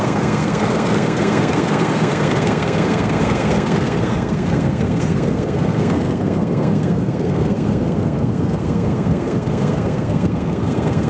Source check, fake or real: fake